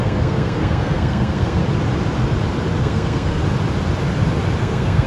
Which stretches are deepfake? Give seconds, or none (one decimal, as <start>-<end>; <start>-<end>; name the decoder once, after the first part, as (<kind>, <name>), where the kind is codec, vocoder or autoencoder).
0.0-1.6 (codec, SNAC); 2.8-3.4; 4.6-5.1